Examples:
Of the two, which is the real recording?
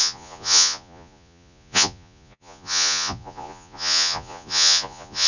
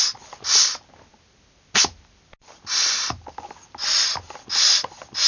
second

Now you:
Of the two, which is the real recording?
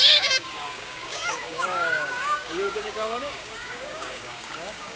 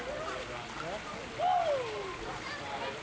second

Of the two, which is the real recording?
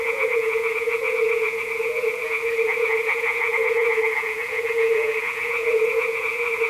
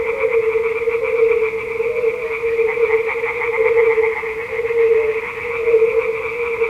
second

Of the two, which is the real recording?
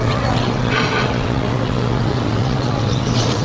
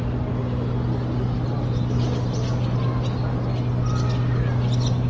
second